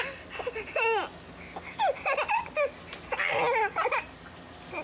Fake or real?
real